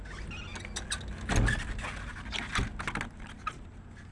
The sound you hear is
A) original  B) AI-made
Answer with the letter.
A